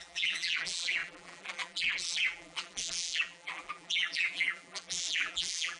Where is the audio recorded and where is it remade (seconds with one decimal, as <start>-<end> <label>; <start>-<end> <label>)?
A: 0.0-5.8 remade